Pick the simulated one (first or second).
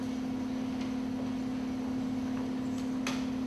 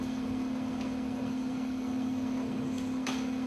second